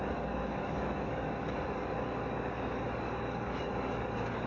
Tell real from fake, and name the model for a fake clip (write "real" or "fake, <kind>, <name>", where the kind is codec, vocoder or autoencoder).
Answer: fake, codec, DAC